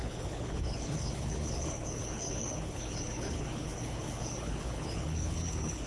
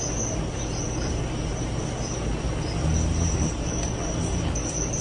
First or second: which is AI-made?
first